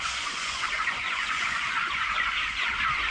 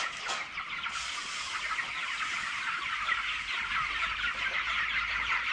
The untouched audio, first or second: second